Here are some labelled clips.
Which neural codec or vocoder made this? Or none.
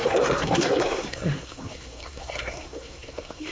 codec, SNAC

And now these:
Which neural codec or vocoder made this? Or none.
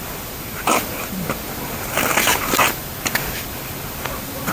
none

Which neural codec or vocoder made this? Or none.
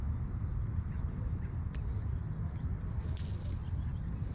none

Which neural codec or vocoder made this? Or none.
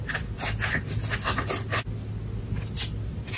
none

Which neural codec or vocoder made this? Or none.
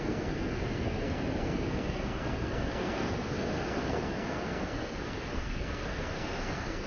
codec, SNAC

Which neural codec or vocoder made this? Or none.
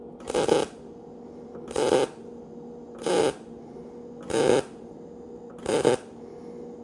none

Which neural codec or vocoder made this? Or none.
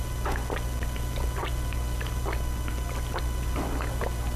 none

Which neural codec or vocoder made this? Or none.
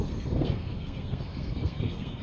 codec, SNAC